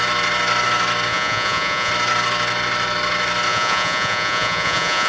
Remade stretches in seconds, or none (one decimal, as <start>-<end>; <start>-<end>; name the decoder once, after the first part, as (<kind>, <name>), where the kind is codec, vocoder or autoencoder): 1.1-1.9 (vocoder, Vocos); 3.5-5.1

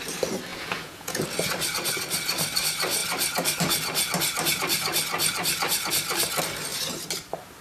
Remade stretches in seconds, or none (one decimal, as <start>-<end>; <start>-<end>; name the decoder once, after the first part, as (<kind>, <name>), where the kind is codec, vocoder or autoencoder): 0.5-1.2 (vocoder, Vocos)

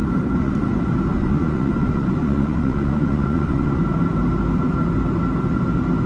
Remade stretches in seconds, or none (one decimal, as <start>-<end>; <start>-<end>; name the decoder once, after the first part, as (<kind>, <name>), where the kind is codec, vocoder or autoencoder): 0.0-0.6 (vocoder, Vocos); 1.1-3.8

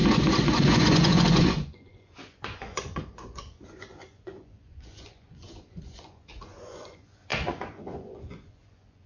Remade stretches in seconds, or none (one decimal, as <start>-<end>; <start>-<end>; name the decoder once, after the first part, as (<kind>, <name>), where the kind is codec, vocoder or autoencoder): 0.0-9.1 (vocoder, Vocos)

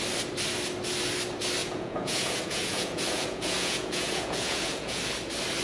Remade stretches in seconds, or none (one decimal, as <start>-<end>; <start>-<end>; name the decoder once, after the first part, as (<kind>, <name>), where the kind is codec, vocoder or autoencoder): 1.6-5.0 (vocoder, Vocos)

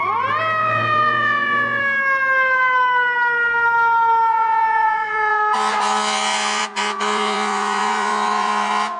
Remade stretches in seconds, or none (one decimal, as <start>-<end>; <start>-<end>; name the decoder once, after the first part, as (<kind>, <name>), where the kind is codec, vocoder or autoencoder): 0.6-1.8 (vocoder, Vocos); 4.3-9.0

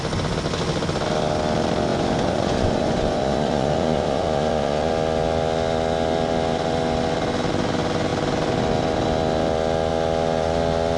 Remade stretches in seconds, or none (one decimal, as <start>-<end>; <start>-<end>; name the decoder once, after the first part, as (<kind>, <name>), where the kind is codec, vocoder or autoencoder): 1.9-4.9 (vocoder, Vocos)